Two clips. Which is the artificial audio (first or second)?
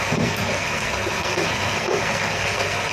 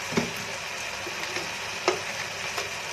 first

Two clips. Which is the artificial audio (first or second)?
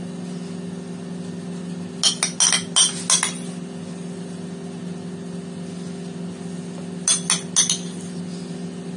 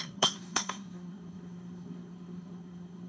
second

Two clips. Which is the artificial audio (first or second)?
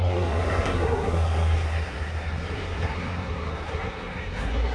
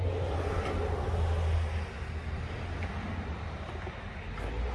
first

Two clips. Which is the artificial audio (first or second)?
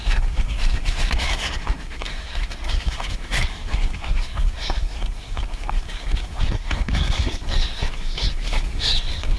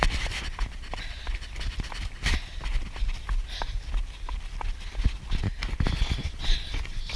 first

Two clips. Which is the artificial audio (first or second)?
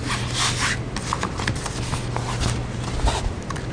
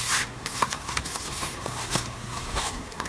second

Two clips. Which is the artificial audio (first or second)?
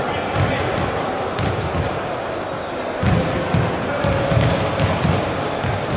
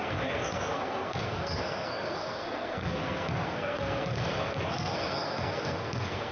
second